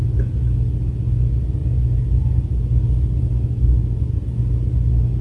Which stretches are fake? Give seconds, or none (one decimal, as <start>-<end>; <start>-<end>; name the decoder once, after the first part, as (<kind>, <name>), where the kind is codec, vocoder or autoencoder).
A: none